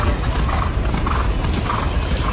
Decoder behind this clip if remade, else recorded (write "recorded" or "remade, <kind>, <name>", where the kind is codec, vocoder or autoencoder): recorded